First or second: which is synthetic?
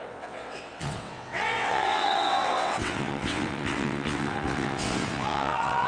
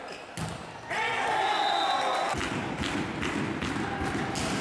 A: first